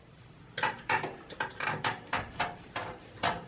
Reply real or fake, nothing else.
fake